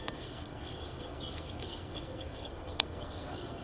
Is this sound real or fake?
fake